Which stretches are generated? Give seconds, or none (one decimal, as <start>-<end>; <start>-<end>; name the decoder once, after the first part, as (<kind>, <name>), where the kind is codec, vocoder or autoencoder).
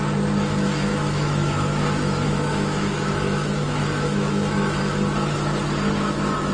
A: 0.9-4.8 (autoencoder, DAC-VAE)